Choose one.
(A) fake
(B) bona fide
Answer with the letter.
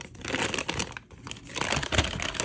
B